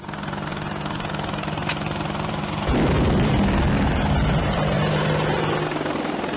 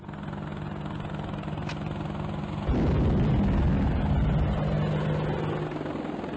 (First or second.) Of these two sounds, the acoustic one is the second